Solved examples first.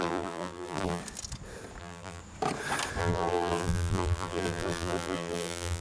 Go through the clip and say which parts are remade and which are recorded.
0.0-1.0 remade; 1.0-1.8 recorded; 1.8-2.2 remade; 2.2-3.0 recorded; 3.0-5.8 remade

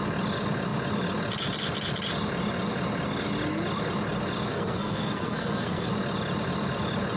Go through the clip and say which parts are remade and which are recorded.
0.0-4.5 recorded; 4.5-5.9 remade; 5.9-7.2 recorded

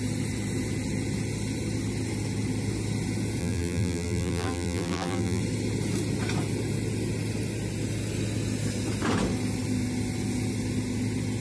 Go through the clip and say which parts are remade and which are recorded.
0.0-3.4 recorded; 3.4-5.4 remade; 5.4-11.4 recorded